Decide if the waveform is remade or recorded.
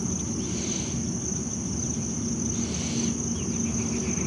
recorded